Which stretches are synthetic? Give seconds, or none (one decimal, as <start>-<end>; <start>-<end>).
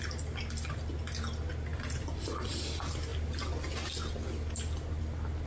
1.7-2.5